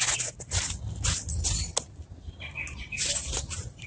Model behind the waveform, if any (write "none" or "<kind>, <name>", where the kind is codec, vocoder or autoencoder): none